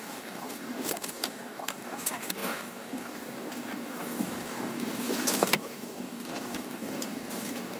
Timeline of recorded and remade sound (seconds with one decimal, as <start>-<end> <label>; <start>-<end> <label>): 0.0-7.8 remade